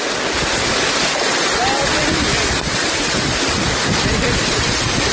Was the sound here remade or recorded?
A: recorded